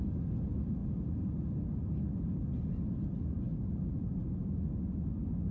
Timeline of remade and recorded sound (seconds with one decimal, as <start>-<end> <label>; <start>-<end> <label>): 0.0-5.5 recorded